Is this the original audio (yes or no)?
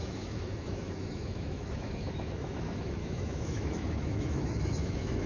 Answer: no